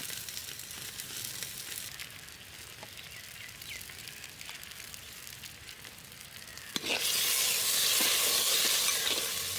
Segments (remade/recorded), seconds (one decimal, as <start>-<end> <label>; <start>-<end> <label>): 0.0-9.6 recorded